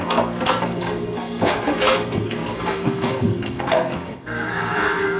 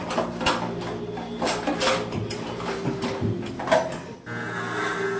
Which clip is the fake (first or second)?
first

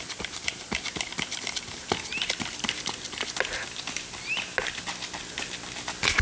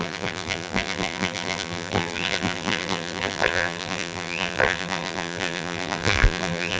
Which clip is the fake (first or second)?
second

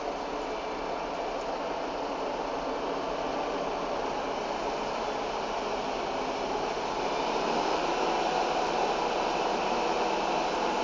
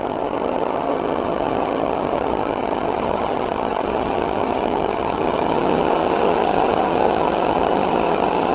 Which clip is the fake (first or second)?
second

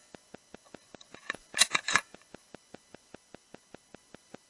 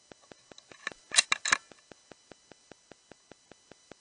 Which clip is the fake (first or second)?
first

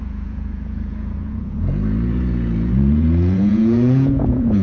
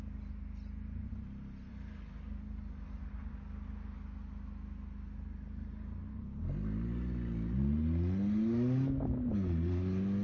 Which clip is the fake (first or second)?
first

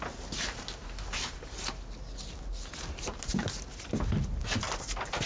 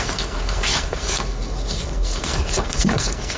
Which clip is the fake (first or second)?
second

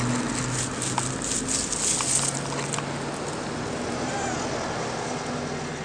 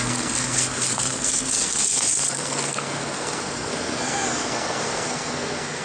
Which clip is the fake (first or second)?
second